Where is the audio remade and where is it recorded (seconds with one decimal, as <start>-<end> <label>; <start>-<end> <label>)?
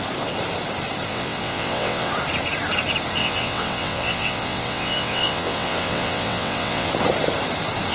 0.0-1.1 recorded; 1.1-2.1 remade; 2.1-3.2 recorded; 3.2-6.9 remade; 6.9-7.9 recorded